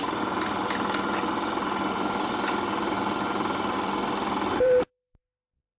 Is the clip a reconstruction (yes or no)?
yes